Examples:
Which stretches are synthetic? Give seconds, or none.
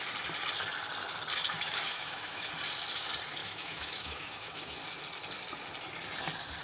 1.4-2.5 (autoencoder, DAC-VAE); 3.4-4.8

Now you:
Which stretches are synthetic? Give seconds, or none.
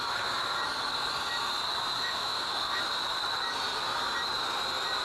2.0-2.8 (autoencoder, DAC-VAE)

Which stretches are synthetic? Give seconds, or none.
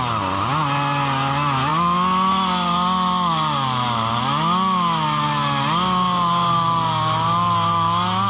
none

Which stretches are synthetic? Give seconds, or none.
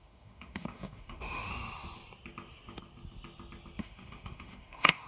0.0-1.5 (autoencoder, DAC-VAE); 3.8-5.1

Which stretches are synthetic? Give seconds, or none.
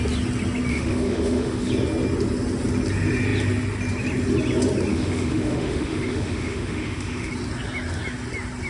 0.7-1.7 (autoencoder, DAC-VAE); 4.9-7.3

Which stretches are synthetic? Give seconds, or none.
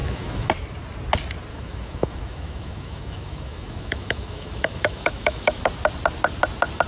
0.0-0.5 (autoencoder, DAC-VAE); 1.5-5.6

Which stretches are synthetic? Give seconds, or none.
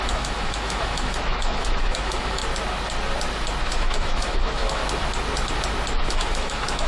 0.0-2.4 (autoencoder, DAC-VAE); 3.6-4.8; 6.0-6.9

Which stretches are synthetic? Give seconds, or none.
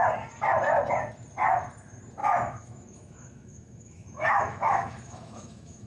2.2-5.9 (autoencoder, DAC-VAE)